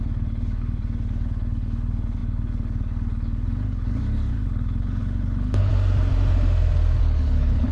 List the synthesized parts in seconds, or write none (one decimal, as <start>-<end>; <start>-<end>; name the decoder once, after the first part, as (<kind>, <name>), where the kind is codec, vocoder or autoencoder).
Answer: 0.0-5.7 (codec, HILCodec); 7.0-7.7